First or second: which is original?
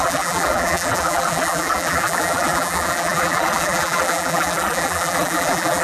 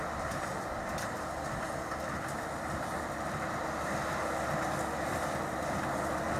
second